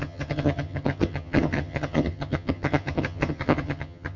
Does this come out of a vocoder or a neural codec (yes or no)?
yes